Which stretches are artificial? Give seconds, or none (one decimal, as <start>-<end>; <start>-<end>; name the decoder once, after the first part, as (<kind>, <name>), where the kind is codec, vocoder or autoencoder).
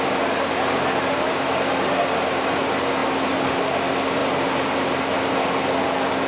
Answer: none